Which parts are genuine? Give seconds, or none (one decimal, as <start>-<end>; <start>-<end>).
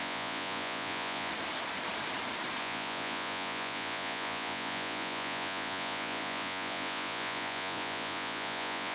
1.3-2.6